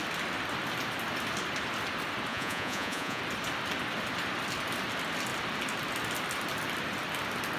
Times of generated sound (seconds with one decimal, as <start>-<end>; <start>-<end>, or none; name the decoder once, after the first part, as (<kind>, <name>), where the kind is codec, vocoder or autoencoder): 2.3-3.2 (vocoder, Vocos)